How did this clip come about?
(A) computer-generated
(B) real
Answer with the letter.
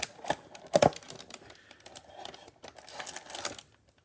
B